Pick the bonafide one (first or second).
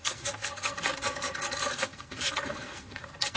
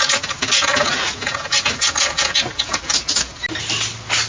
second